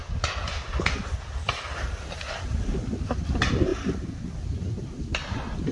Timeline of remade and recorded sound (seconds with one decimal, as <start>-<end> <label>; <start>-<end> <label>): 0.0-5.7 recorded